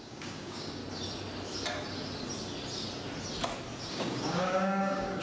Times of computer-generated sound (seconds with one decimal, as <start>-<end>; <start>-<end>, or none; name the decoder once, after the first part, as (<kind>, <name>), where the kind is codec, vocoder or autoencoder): 0.0-0.8 (codec, DAC); 3.9-5.2